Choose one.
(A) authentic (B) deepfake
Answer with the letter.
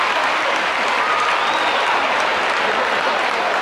A